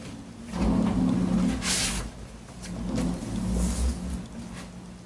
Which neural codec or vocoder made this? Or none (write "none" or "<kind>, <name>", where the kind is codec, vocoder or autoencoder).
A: none